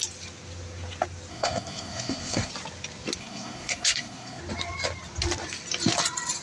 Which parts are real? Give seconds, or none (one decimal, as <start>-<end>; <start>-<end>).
0.0-1.3; 2.5-3.2; 4.4-6.4